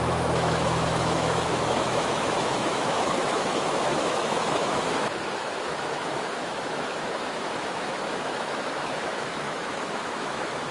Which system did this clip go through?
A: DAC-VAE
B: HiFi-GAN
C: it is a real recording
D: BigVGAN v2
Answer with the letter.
A